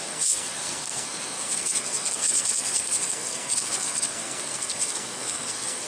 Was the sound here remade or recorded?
remade